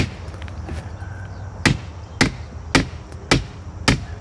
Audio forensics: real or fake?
real